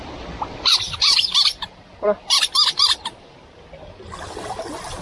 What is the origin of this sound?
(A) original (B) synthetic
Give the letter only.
A